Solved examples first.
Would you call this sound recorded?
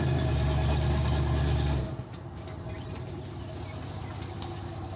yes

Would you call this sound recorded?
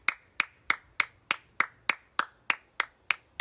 yes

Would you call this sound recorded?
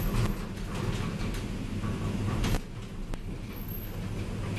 yes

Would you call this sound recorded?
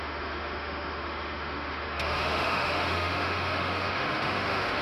no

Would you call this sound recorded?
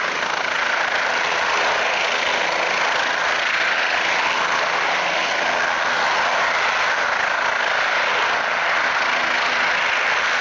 yes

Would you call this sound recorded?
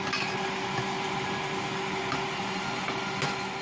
yes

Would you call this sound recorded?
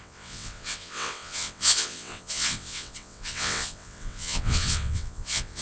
no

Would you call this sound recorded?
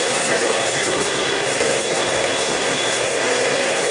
no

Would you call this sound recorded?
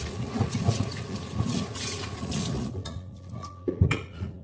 no